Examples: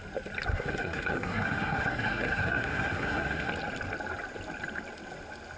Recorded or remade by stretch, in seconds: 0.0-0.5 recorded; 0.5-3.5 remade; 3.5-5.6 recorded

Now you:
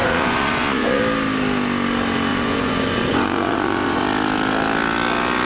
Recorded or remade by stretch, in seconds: 0.0-1.0 remade; 1.0-2.3 recorded; 2.3-4.0 remade; 4.0-5.4 recorded

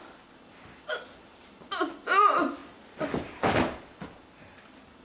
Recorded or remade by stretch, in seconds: 0.0-5.0 recorded

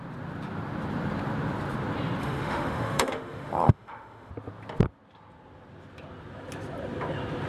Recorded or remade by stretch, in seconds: 0.0-2.2 recorded; 2.2-4.3 remade; 4.3-7.5 recorded

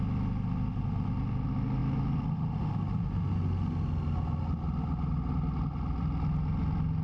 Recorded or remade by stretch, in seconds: 0.0-7.0 recorded

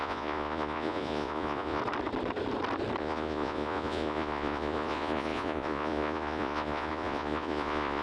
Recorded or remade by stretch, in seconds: 0.0-1.8 remade; 1.8-3.0 recorded; 3.0-8.0 remade

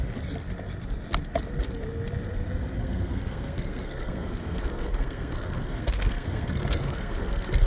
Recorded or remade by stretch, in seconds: 0.0-2.8 recorded; 2.8-7.7 remade

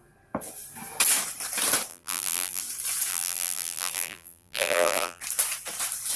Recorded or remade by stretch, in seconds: 0.0-1.9 recorded; 1.9-2.6 remade; 2.6-3.1 recorded; 3.1-5.2 remade; 5.2-6.2 recorded